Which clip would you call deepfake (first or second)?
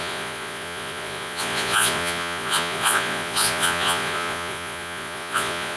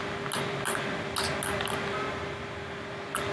first